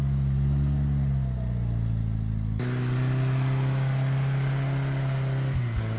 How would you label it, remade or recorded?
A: recorded